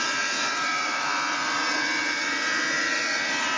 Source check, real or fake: fake